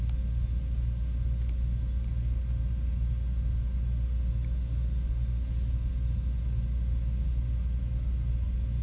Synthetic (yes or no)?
no